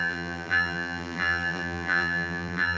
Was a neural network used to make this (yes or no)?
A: yes